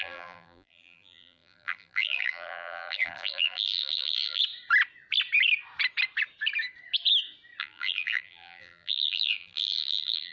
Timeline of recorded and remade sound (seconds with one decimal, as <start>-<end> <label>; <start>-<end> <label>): 0.0-4.4 remade; 4.4-7.6 recorded; 7.6-10.3 remade